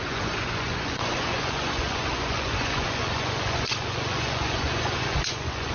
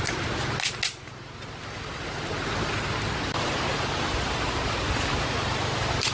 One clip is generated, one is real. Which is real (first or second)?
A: second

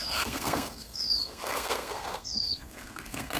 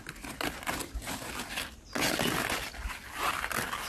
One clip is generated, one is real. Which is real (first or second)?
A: second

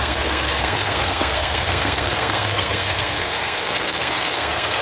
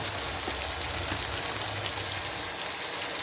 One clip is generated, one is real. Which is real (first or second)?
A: second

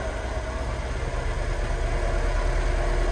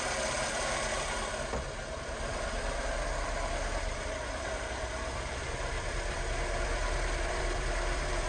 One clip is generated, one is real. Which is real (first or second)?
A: first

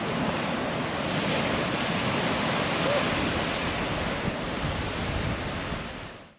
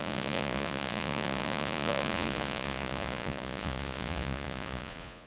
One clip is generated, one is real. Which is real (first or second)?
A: first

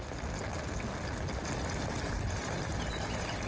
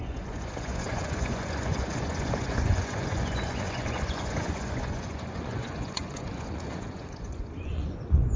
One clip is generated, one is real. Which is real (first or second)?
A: first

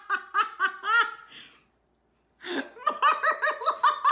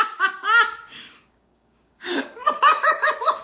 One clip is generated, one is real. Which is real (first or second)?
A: first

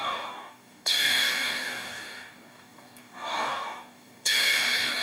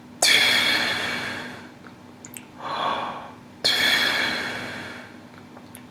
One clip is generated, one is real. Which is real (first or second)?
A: second